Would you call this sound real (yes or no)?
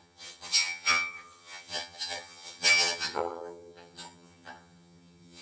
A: no